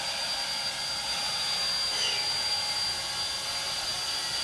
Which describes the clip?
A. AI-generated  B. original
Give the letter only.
B